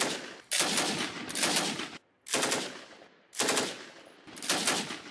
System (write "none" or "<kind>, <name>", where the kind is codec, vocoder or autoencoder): none